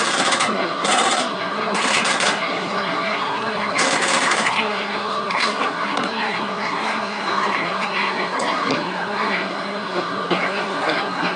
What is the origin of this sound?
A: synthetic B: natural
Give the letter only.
A